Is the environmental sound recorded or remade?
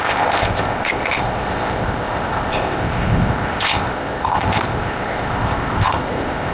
remade